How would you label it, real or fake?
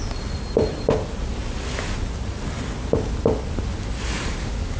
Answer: real